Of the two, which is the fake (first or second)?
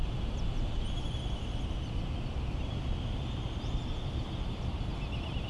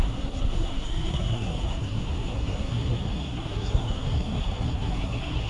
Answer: second